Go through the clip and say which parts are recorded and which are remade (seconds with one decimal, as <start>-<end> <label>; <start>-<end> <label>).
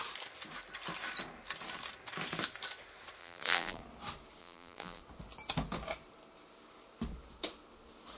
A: 0.0-3.2 recorded; 3.2-3.8 remade; 3.8-4.4 recorded; 4.4-5.0 remade; 5.0-8.2 recorded